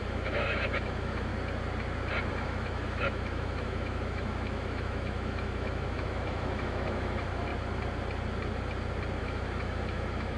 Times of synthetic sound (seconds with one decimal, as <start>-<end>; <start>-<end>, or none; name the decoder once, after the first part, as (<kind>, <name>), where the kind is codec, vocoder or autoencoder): 0.0-1.3 (autoencoder, DAC-VAE); 2.3-7.5; 9.2-10.4

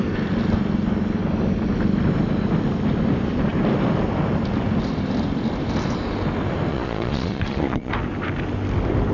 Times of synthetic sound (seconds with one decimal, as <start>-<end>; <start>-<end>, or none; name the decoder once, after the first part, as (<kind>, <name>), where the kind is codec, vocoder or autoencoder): 6.7-7.9 (vocoder, Vocos)